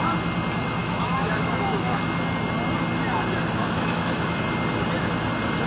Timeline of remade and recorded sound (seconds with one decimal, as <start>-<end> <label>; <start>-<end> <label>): 0.0-0.8 recorded; 0.8-2.0 remade; 2.0-3.6 recorded; 3.6-4.4 remade; 4.4-5.7 recorded